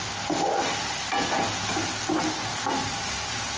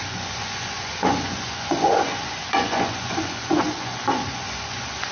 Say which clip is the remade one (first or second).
second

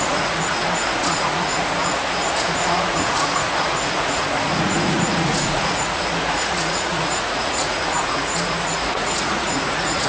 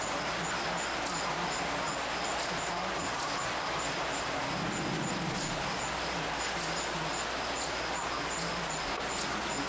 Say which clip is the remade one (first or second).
first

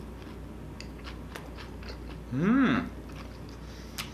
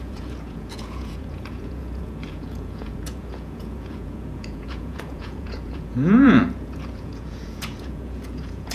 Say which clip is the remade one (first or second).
second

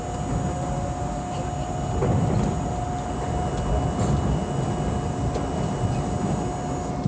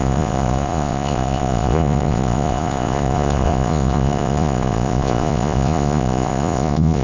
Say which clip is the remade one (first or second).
second